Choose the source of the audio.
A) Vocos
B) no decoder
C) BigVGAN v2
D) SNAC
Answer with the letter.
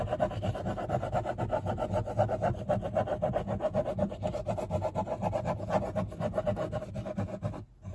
B